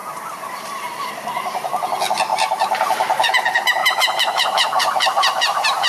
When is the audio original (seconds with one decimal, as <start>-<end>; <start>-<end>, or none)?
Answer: 0.0-2.3; 3.3-3.8